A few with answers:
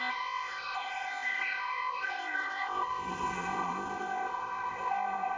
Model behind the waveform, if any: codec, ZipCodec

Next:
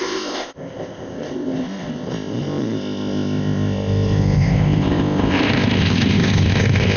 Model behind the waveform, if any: codec, ZipCodec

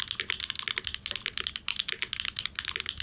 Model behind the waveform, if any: none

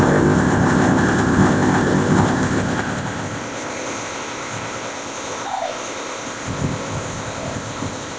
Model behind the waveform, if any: codec, ZipCodec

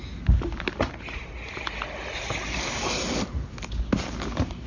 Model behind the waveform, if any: none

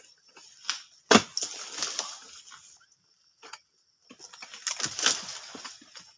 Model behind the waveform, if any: none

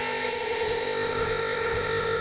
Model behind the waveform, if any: codec, ZipCodec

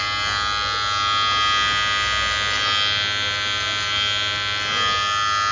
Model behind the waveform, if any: none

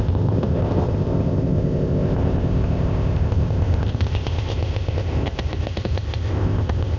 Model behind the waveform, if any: codec, ZipCodec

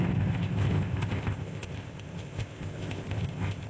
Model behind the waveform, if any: codec, ZipCodec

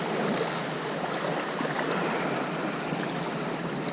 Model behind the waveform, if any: none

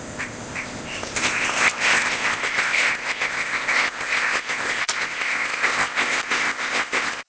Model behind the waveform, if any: codec, ZipCodec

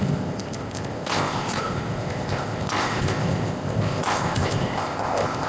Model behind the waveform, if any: codec, ZipCodec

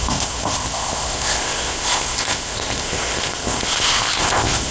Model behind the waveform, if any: codec, ZipCodec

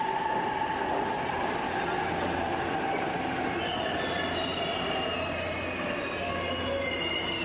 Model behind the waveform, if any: none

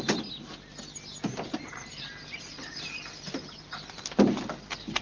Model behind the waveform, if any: none